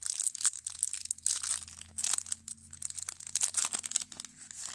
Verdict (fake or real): real